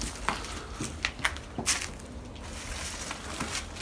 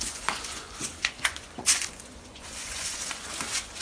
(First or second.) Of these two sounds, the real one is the first